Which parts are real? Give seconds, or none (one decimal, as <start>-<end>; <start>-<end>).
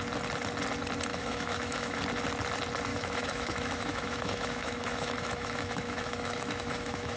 0.0-1.1; 2.0-2.9